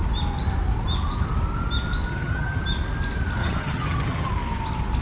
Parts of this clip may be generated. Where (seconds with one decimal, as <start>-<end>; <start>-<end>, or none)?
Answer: 2.1-2.6; 3.4-4.3